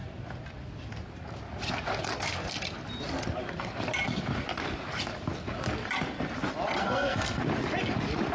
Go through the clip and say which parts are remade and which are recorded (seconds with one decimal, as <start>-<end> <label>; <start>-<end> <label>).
0.0-6.8 recorded; 6.8-7.4 remade; 7.4-8.3 recorded